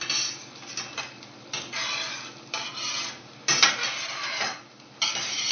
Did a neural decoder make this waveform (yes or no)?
no